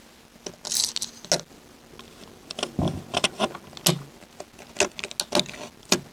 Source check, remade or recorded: recorded